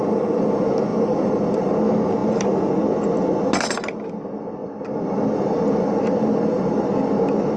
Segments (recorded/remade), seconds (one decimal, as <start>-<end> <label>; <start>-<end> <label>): 0.0-0.9 recorded; 0.9-1.8 remade; 1.8-4.6 recorded; 4.6-6.8 remade; 6.8-7.6 recorded